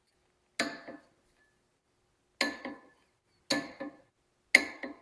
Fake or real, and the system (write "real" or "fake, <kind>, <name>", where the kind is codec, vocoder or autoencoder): real